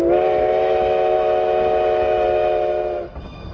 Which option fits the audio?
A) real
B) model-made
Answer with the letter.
A